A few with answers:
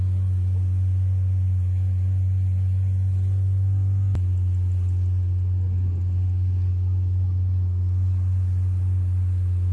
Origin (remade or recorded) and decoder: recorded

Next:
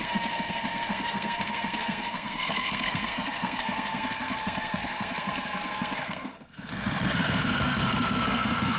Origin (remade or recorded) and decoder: remade, codec, SNAC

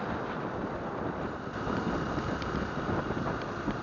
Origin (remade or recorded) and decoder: recorded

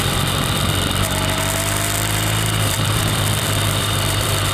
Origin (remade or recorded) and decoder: remade, vocoder, BigVGAN v2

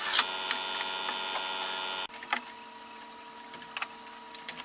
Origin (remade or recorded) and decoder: recorded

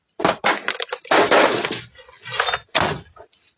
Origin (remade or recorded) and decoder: recorded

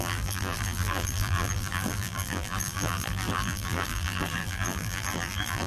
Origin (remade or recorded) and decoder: remade, vocoder, BigVGAN v2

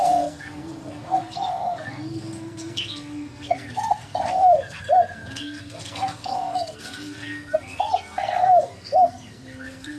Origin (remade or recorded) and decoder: remade, codec, SNAC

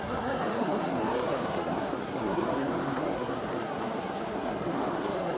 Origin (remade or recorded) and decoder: remade, codec, SNAC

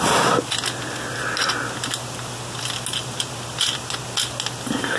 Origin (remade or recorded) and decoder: recorded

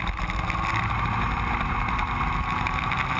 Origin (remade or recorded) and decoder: recorded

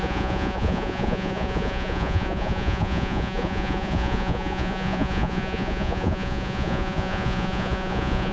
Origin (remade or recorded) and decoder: remade, vocoder, Vocos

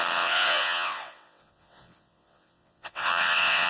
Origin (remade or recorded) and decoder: remade, vocoder, WaveNeXt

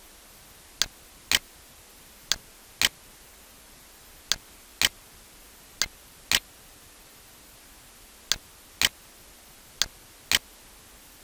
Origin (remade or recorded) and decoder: recorded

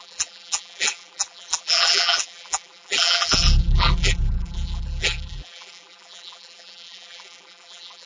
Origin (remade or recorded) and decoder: remade, vocoder, BigVGAN v2